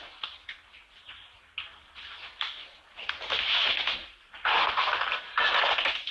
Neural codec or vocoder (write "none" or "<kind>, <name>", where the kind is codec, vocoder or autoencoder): none